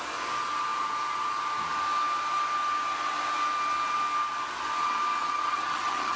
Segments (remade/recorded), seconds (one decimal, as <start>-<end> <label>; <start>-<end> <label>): 0.0-5.2 recorded; 5.2-6.2 remade